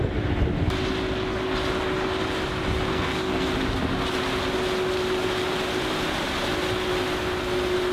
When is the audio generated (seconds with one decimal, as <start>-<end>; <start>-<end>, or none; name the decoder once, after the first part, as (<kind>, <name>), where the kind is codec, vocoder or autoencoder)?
2.9-3.5 (codec, SNAC)